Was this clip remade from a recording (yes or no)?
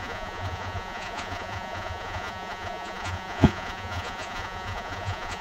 yes